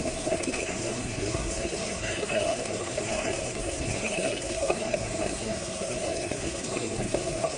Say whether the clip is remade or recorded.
remade